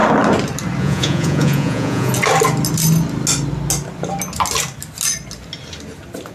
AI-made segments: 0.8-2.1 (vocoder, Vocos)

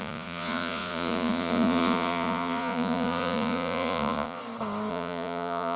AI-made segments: 0.0-4.4 (vocoder, Vocos); 4.9-5.8

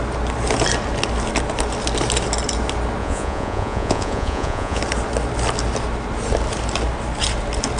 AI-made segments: 3.0-4.8 (vocoder, Vocos)

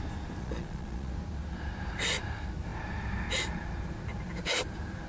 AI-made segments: 0.4-1.1 (vocoder, Vocos)

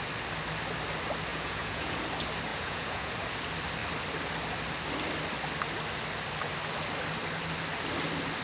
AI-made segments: 1.3-2.0 (vocoder, Vocos); 2.5-3.1

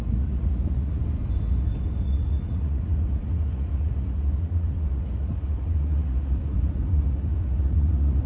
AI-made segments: 0.0-1.0 (vocoder, Vocos); 2.0-8.3

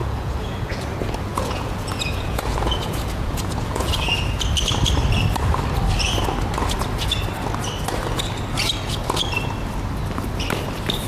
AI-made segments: 0.0-0.8 (vocoder, Vocos); 1.3-4.0